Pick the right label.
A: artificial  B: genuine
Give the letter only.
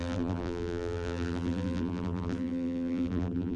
A